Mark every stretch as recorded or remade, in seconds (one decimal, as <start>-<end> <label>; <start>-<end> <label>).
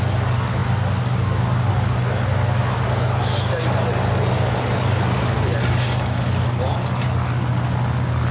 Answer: 0.0-8.3 recorded